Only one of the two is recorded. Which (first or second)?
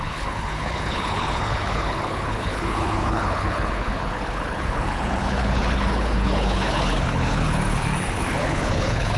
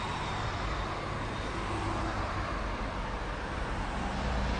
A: second